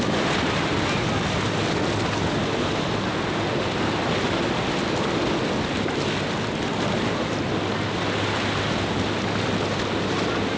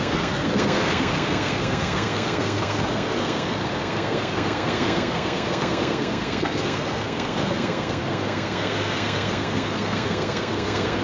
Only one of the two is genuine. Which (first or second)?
first